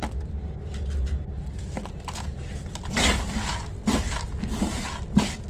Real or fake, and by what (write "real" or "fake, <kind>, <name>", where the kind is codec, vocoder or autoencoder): real